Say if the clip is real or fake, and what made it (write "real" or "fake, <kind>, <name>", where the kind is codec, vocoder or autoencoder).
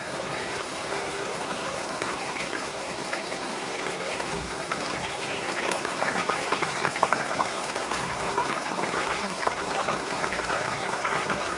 fake, codec, SNAC